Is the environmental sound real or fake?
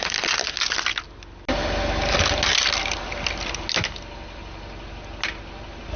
real